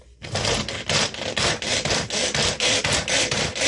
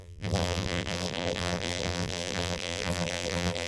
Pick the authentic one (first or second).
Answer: first